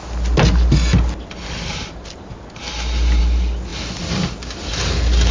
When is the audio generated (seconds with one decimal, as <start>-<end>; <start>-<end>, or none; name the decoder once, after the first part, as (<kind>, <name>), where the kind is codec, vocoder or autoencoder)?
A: none